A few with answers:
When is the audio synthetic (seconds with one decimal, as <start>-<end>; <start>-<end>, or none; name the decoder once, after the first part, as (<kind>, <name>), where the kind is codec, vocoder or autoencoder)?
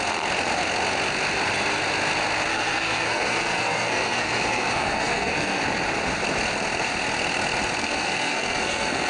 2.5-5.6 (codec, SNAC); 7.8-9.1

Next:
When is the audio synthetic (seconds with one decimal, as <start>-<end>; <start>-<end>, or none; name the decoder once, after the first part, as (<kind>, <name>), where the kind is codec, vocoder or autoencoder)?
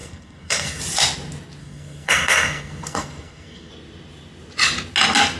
0.0-0.8 (codec, SNAC); 1.6-3.7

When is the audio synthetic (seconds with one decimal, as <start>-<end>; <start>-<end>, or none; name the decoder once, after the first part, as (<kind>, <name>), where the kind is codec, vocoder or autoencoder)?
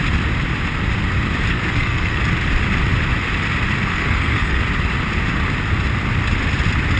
1.5-2.2 (codec, SNAC); 3.9-4.6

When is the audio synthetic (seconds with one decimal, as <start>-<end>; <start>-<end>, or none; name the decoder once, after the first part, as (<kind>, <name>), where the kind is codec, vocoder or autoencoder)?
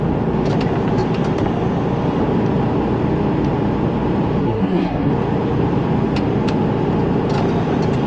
4.4-5.1 (codec, SNAC)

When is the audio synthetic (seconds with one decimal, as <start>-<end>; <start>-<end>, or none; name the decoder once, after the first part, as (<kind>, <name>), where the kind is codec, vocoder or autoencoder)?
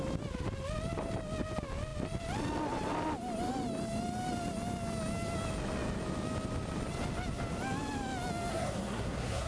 8.5-9.5 (codec, SNAC)